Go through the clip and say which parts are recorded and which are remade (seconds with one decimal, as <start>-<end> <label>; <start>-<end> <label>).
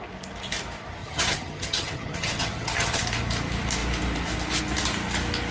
0.0-1.0 recorded; 1.0-3.0 remade; 3.0-5.5 recorded